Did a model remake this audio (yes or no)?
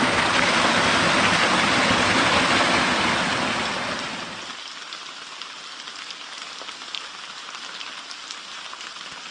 no